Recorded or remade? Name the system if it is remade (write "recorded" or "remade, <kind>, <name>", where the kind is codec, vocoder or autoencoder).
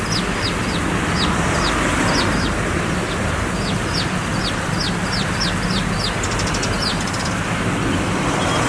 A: recorded